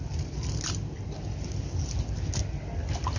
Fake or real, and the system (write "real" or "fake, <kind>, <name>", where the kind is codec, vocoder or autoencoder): real